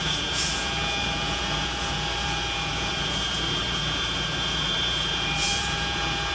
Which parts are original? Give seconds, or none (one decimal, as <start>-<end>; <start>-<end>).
none